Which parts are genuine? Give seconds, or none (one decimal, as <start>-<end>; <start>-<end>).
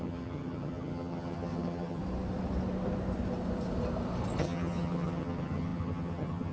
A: 2.0-4.4